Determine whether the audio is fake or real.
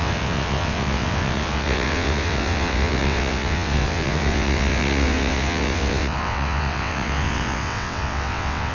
fake